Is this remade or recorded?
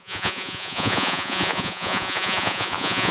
remade